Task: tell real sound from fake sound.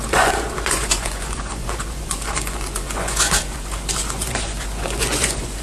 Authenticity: fake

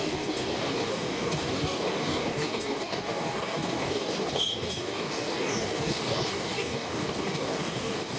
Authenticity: fake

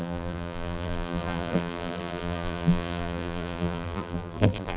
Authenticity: fake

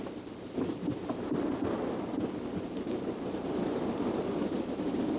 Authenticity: real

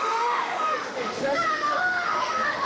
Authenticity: fake